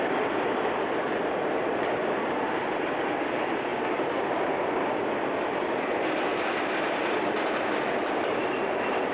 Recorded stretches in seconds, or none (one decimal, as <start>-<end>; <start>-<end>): 0.0-9.1